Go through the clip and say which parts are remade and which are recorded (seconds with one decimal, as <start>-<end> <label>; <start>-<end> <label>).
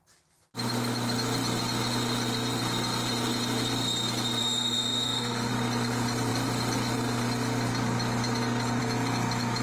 0.0-4.4 recorded; 4.4-5.5 remade; 5.5-9.6 recorded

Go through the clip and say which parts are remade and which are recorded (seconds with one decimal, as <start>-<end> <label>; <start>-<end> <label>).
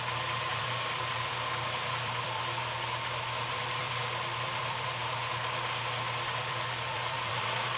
0.0-5.0 remade; 5.0-6.4 recorded; 6.4-7.8 remade